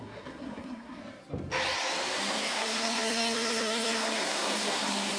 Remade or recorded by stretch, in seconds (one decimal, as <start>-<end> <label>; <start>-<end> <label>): 0.0-1.0 remade; 1.0-2.3 recorded; 2.3-5.2 remade